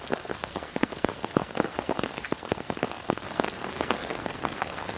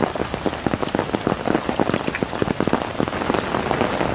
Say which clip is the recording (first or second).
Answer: second